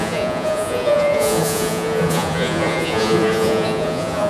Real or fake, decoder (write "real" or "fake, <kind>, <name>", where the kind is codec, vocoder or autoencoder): fake, vocoder, Vocos